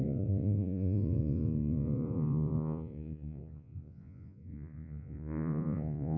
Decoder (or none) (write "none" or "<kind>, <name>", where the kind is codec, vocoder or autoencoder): vocoder, Vocos